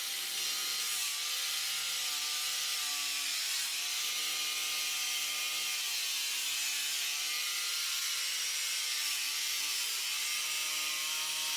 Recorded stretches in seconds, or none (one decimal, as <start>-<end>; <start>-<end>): 0.0-11.6